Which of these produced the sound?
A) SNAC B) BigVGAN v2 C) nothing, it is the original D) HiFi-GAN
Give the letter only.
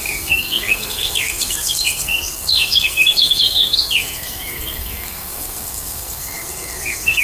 A